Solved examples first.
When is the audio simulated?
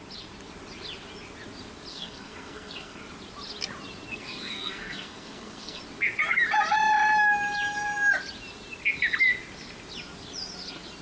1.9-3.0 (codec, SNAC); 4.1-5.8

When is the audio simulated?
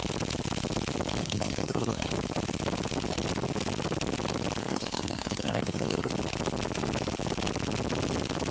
1.2-2.1 (codec, SNAC); 4.6-6.1